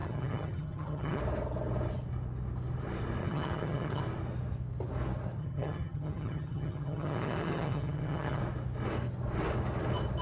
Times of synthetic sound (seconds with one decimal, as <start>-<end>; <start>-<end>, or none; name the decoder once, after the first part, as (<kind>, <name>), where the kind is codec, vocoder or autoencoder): 0.0-1.2 (vocoder, HiFi-GAN); 3.2-4.0; 5.4-8.4